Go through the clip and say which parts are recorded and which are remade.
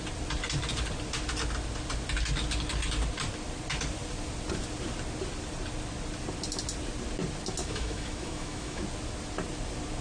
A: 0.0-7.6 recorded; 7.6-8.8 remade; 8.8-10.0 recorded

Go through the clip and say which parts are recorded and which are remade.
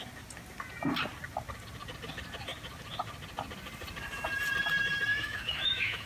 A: 0.0-5.1 recorded; 5.1-6.1 remade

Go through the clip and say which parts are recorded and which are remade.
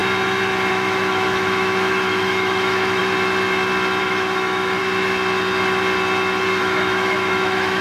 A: 0.0-0.7 recorded; 0.7-3.0 remade; 3.0-4.0 recorded; 4.0-4.8 remade; 4.8-6.6 recorded; 6.6-7.8 remade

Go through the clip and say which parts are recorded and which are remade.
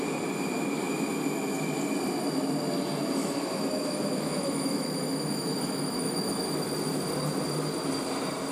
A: 0.0-3.2 recorded; 3.2-6.6 remade; 6.6-8.5 recorded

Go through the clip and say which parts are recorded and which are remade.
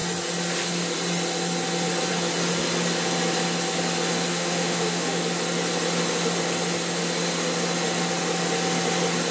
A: 0.0-4.3 recorded; 4.3-5.2 remade; 5.2-9.3 recorded